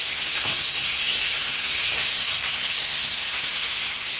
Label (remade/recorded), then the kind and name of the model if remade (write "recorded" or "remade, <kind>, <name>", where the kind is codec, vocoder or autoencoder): remade, codec, SNAC